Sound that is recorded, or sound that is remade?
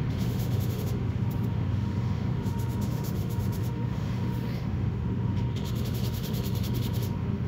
remade